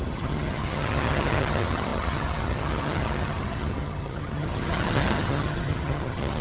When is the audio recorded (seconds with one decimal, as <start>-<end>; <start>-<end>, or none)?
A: none